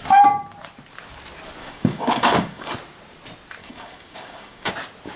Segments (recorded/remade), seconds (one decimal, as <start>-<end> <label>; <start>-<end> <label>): 0.0-1.6 recorded; 1.6-2.7 remade; 2.7-3.6 recorded; 3.6-4.7 remade; 4.7-5.2 recorded